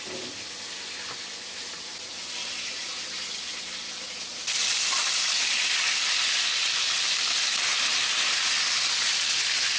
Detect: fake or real real